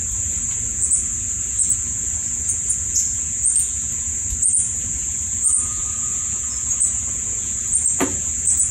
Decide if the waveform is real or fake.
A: fake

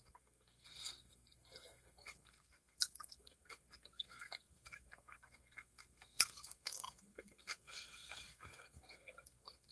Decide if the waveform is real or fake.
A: fake